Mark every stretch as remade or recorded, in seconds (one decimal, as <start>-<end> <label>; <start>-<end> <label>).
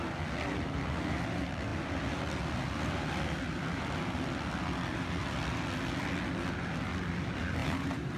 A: 0.0-7.6 recorded; 7.6-8.2 remade